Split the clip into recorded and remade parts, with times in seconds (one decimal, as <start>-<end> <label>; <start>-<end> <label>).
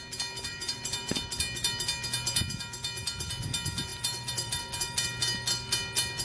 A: 0.0-0.5 recorded; 0.5-1.1 remade; 1.1-3.9 recorded; 3.9-4.6 remade; 4.6-6.2 recorded